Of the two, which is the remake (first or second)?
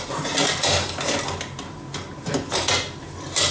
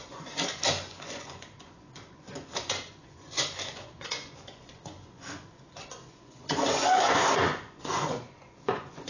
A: second